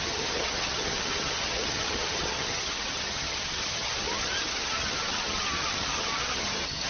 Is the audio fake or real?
fake